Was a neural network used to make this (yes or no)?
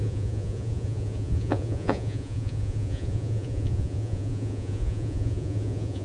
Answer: yes